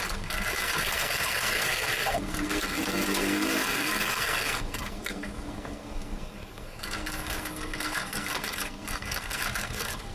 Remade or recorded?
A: remade